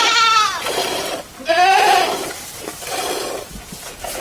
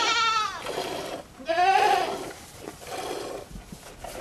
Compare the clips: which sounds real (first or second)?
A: second